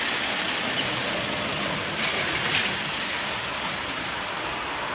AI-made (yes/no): no